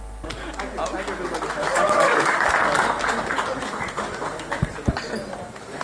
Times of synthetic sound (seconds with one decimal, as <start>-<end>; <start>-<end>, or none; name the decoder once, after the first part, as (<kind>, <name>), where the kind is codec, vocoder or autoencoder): 1.6-4.7 (codec, DAC)